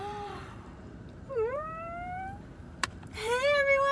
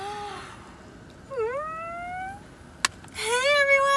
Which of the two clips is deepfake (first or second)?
first